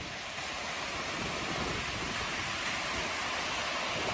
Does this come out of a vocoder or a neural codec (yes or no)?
no